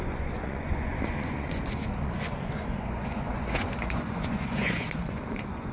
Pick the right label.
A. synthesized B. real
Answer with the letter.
A